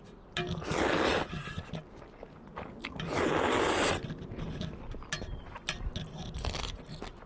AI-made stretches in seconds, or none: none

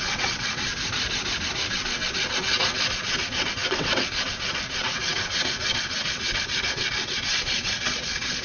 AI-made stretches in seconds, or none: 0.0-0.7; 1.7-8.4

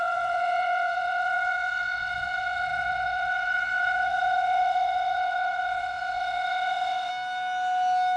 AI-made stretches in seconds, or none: 0.0-7.1

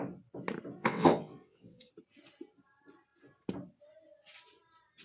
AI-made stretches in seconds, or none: 0.8-1.9